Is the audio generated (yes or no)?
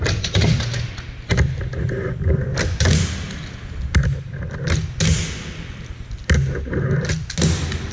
no